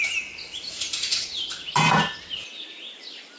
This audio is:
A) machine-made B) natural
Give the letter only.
B